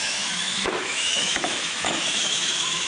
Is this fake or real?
fake